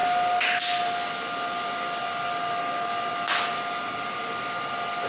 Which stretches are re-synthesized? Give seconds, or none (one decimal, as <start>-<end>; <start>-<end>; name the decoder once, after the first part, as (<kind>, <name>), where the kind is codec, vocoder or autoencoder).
none